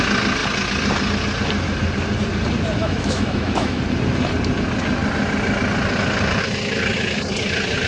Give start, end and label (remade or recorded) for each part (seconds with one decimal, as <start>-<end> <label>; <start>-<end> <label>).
0.0-2.8 recorded; 2.8-3.8 remade; 3.8-7.9 recorded